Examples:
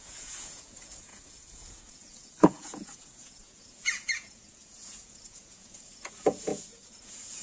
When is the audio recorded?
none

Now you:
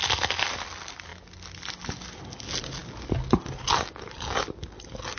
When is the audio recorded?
0.0-5.2

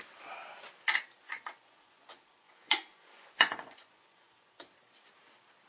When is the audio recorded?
0.0-1.2; 4.6-5.7

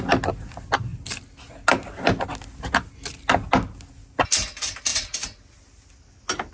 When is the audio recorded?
0.0-6.5